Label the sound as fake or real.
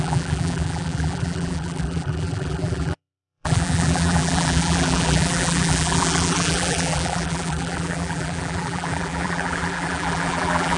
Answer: fake